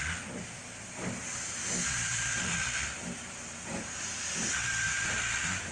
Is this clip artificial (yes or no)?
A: yes